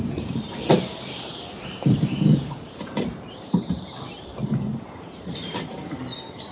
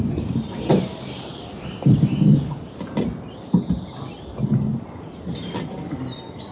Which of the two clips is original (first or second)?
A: second